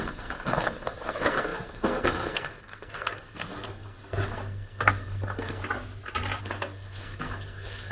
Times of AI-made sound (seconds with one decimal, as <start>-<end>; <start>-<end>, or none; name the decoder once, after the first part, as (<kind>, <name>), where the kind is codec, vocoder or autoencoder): 0.0-5.6 (codec, SNAC); 6.4-7.9